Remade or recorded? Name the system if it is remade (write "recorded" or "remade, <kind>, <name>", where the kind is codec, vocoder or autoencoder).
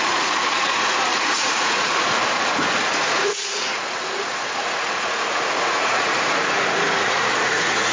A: remade, vocoder, Vocos